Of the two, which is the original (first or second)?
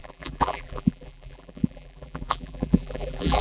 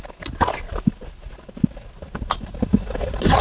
second